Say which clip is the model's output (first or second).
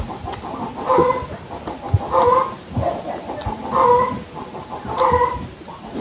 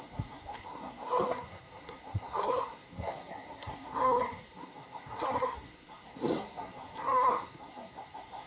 second